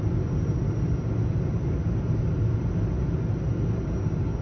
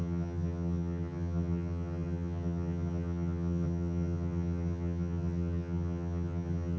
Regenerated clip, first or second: second